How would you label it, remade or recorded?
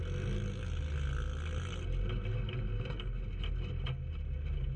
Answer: recorded